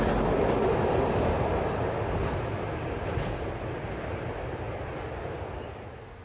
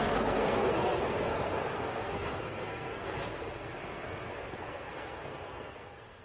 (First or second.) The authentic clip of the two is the first